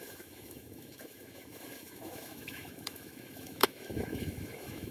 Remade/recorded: remade